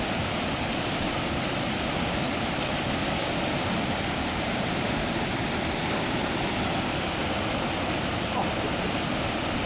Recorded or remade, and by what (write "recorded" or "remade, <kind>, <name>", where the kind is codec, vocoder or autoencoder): recorded